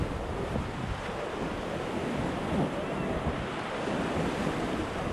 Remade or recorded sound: recorded